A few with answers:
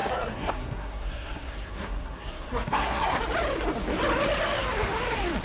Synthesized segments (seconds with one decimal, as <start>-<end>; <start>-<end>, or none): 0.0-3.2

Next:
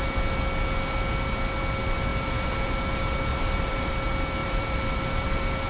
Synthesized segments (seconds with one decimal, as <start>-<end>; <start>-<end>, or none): 2.1-2.8; 3.3-3.9; 4.4-5.7

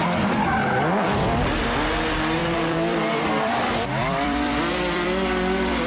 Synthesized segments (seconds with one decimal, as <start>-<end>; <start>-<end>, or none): 2.4-5.9

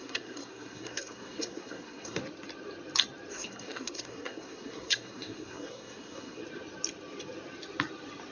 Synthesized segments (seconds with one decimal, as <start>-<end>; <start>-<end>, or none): 0.0-2.2; 3.3-6.4

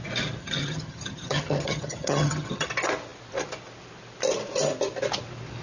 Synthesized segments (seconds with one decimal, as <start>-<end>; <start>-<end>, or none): 0.4-2.7

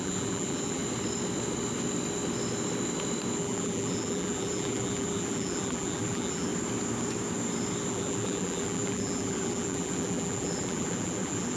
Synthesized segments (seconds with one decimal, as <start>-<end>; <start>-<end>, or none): 0.0-0.8; 3.4-6.5; 7.9-11.6

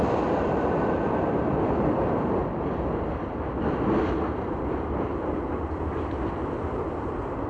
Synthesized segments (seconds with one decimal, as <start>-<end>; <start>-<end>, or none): 0.0-2.4; 3.0-7.5

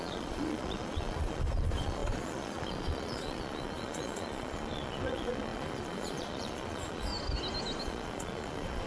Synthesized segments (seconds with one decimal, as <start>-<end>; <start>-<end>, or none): 0.0-7.1; 7.8-8.9